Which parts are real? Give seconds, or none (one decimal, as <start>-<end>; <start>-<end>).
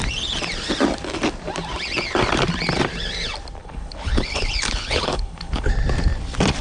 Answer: 0.0-3.6; 5.7-6.6